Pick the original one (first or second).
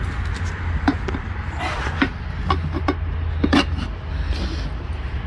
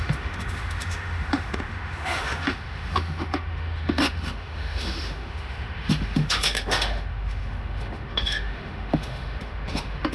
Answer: first